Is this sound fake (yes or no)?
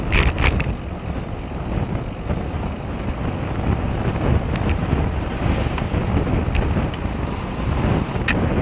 no